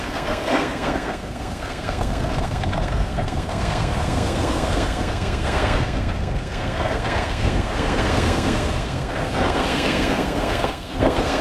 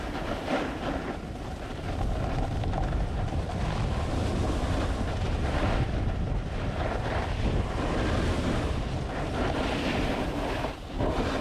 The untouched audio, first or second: second